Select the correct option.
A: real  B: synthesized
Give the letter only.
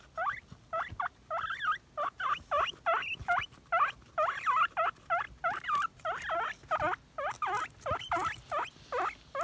A